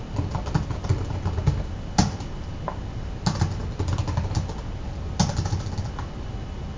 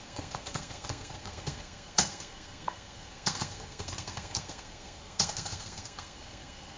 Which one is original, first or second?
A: first